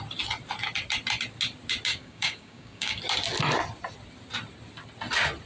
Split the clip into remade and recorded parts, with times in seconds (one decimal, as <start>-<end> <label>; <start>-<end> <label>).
0.0-1.9 recorded; 1.9-3.0 remade; 3.0-5.5 recorded